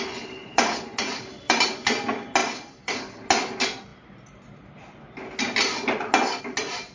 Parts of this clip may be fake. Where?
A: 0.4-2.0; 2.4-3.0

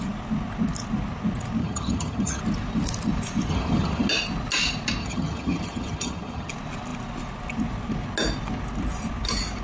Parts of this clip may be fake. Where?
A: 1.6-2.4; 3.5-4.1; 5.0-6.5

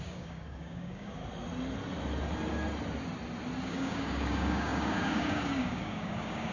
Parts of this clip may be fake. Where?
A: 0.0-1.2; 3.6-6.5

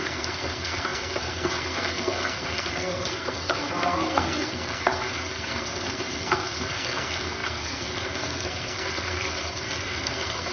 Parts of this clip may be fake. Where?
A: 0.0-10.5

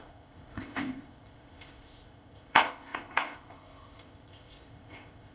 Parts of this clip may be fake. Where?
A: 0.0-5.3